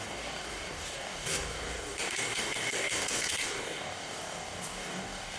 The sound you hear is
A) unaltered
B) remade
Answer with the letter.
B